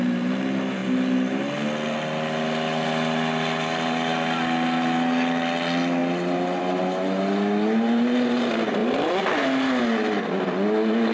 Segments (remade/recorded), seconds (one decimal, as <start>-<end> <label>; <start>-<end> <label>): 0.0-11.1 recorded